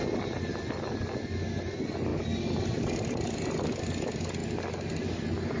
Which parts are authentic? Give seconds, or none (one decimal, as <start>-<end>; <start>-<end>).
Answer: 0.0-5.6